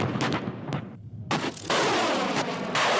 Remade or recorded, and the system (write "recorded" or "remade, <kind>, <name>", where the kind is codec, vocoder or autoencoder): recorded